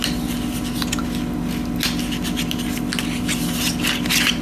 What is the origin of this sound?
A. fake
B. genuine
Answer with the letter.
B